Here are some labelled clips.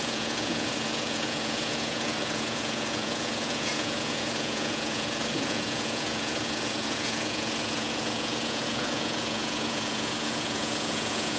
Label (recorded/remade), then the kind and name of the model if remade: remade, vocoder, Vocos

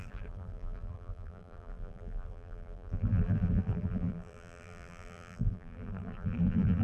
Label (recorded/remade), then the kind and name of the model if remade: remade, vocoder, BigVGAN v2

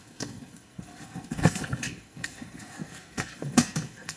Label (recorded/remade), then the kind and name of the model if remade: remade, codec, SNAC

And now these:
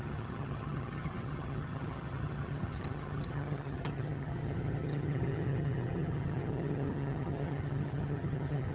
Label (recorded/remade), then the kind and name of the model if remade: remade, vocoder, HiFi-GAN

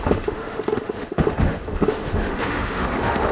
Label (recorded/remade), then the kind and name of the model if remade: remade, autoencoder, DAC-VAE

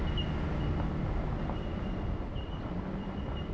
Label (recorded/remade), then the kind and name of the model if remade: recorded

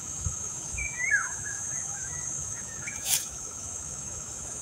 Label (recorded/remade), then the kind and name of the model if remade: remade, autoencoder, DAC-VAE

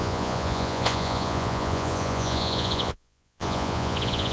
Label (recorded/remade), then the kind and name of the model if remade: remade, vocoder, Vocos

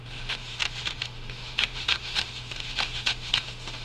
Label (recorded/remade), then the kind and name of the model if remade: remade, autoencoder, DAC-VAE